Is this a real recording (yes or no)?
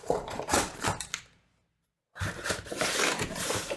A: yes